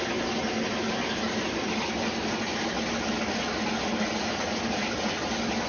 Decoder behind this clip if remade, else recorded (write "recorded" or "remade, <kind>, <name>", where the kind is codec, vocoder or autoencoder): recorded